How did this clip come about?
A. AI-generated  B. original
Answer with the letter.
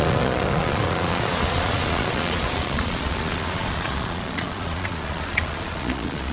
A